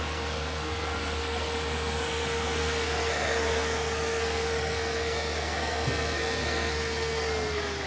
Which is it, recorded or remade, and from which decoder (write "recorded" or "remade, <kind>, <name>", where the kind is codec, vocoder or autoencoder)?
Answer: remade, codec, SNAC